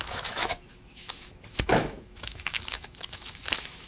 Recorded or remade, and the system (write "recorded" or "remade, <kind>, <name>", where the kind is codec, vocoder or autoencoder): remade, autoencoder, DAC-VAE